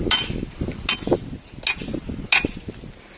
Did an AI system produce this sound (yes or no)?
no